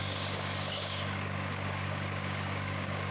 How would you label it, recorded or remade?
remade